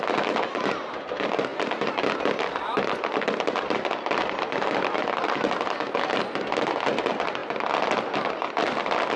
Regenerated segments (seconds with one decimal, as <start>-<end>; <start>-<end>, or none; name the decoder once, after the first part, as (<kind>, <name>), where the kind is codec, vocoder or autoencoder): none